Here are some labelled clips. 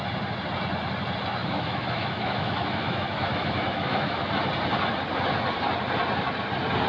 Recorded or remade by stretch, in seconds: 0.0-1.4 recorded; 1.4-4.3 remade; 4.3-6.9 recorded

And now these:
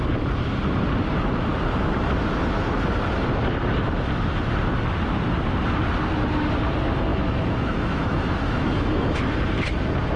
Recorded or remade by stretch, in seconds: 0.0-7.1 recorded; 7.1-9.2 remade; 9.2-10.2 recorded

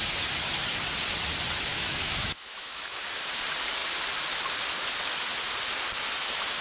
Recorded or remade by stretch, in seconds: 0.0-1.7 recorded; 1.7-3.0 remade; 3.0-6.6 recorded